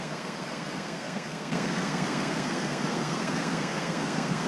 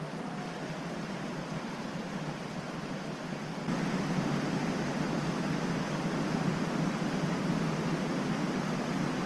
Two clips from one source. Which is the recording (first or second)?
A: second